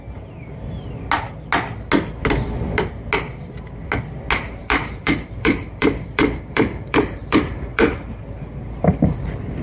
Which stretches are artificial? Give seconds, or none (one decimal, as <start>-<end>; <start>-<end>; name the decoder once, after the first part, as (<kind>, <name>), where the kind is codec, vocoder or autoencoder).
4.6-7.9 (vocoder, BigVGAN v2)